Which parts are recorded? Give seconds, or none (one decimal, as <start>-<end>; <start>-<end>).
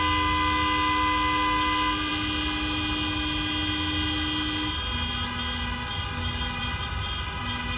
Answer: 0.0-7.8